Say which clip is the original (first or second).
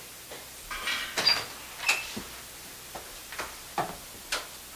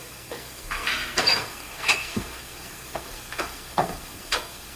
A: first